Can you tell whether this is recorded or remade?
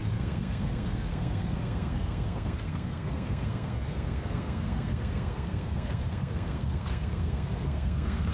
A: remade